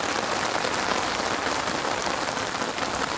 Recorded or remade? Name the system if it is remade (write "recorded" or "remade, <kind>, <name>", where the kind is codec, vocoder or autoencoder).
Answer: recorded